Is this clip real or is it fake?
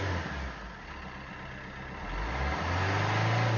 real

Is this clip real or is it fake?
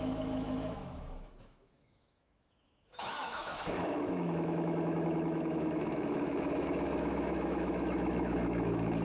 fake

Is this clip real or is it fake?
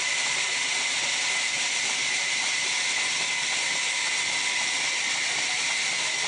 real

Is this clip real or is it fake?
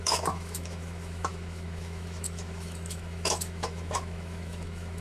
fake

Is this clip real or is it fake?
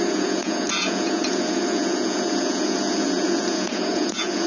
fake